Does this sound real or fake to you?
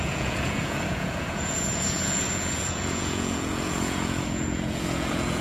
fake